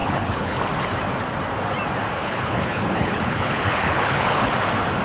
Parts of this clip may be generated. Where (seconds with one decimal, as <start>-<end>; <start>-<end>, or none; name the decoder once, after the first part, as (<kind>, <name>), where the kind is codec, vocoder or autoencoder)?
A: 0.0-0.6 (codec, HILCodec); 2.2-4.5